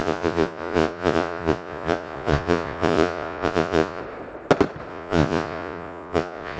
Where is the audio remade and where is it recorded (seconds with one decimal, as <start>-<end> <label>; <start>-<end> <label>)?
0.0-4.0 remade; 4.0-4.9 recorded; 4.9-6.6 remade